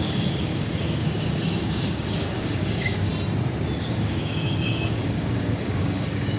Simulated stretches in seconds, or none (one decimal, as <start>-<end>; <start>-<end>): 0.0-3.1; 3.8-6.4